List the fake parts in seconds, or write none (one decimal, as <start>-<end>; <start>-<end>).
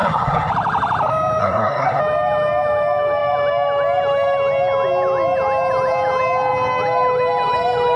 0.0-0.5; 1.4-2.0